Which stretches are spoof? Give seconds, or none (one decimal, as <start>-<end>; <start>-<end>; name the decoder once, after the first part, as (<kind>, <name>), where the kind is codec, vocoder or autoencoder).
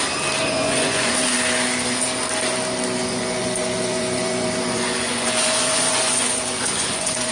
0.4-1.1 (vocoder, Vocos); 3.0-7.3